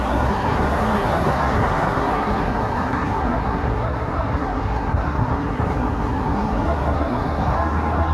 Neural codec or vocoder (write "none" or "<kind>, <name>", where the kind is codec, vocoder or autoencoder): codec, SNAC